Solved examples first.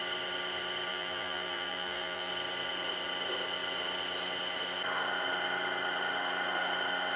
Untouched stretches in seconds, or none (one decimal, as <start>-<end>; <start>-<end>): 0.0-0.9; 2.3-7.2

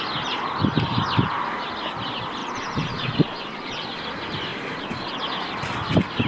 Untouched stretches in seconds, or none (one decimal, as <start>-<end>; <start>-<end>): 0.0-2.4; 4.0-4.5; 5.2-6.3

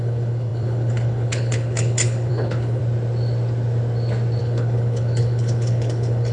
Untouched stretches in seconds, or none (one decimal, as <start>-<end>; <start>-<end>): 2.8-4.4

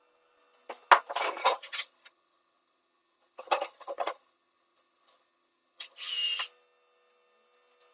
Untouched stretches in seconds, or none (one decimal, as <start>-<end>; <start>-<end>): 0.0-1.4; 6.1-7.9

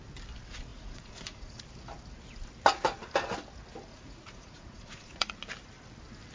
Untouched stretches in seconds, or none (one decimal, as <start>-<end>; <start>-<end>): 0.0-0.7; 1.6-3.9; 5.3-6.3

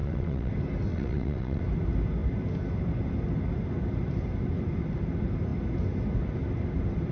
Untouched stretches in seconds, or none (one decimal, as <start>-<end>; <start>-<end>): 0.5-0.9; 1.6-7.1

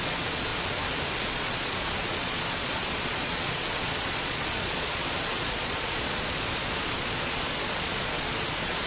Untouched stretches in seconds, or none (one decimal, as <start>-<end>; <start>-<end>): 0.5-1.2